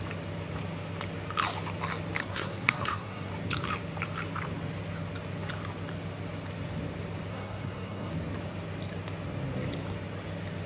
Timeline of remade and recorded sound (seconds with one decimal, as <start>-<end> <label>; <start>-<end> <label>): 0.0-2.2 recorded; 2.2-3.3 remade; 3.3-7.3 recorded; 7.3-8.1 remade; 8.1-10.7 recorded